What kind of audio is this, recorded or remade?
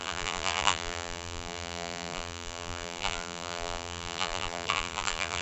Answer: remade